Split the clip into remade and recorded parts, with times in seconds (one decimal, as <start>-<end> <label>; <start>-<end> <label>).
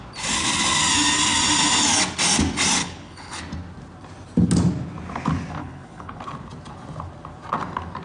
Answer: 0.0-2.8 recorded; 2.8-3.4 remade; 3.4-5.6 recorded; 5.6-6.2 remade; 6.2-8.0 recorded